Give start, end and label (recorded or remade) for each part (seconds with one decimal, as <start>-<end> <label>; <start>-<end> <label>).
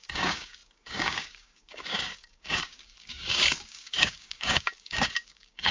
0.0-5.7 remade